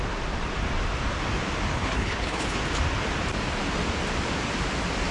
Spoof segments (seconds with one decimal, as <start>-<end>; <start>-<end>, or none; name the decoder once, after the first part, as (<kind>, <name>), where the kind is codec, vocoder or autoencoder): 1.7-2.6 (codec, HILCodec)